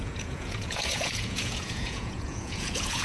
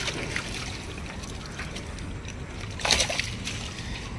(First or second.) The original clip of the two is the second